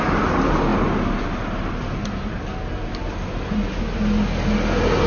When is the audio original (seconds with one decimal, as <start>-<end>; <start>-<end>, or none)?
0.0-5.1

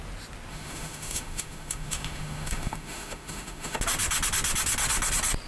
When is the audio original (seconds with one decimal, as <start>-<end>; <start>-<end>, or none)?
0.0-0.5; 3.8-5.5

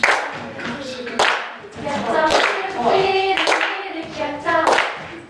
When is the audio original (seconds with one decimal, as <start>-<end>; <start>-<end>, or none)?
0.0-2.3; 3.8-5.3

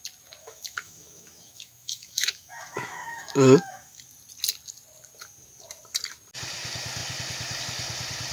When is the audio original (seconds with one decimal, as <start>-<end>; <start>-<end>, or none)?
0.0-0.4; 4.0-8.3

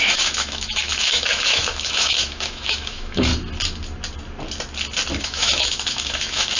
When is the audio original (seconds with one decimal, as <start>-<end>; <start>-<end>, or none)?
3.3-5.2